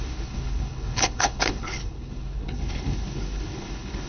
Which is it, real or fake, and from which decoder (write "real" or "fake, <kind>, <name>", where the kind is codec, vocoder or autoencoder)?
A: fake, codec, HILCodec